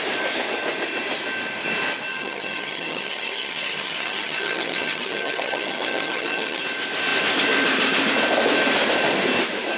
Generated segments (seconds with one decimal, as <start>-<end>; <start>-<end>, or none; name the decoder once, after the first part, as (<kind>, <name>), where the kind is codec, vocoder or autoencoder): 2.1-6.6 (vocoder, HiFi-GAN)